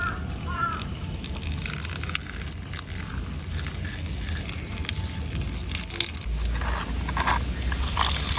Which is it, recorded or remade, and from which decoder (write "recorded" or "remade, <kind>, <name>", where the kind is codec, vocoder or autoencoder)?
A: recorded